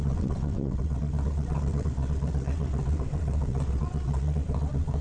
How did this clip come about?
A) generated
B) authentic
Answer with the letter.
A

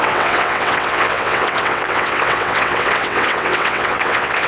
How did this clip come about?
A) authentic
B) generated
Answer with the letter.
B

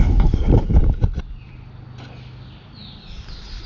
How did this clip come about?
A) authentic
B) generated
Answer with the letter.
A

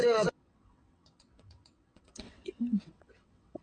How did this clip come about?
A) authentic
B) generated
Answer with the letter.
B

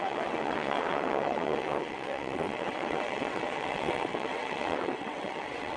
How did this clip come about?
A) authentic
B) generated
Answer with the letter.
B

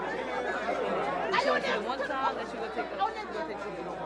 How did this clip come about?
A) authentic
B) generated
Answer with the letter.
A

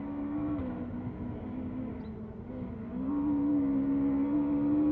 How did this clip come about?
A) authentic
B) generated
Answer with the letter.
A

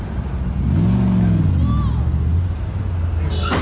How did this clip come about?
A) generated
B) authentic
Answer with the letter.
B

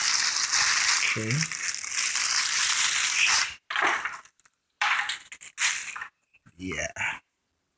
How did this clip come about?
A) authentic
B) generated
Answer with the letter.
A